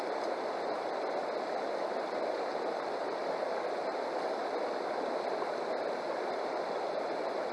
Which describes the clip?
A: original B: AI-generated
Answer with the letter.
A